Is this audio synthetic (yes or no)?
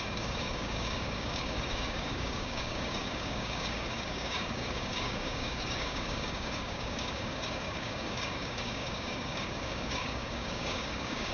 yes